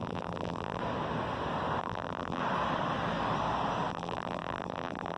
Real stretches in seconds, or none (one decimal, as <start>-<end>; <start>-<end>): 0.8-1.8; 2.4-3.9

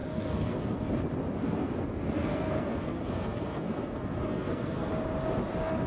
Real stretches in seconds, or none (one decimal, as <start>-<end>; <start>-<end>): 0.8-1.4; 4.9-5.9

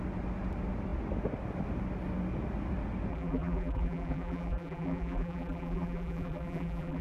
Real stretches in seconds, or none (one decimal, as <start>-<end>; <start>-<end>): 0.0-3.1

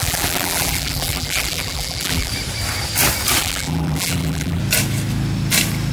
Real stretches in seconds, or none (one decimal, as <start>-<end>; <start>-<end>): 2.3-3.4; 4.6-5.9